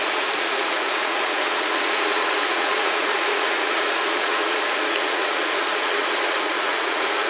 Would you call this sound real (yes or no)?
no